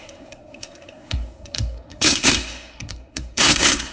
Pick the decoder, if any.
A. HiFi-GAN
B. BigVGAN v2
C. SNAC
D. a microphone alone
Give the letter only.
C